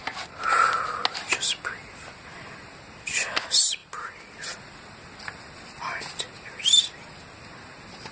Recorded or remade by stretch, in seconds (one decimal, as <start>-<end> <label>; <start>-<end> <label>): 0.0-8.1 recorded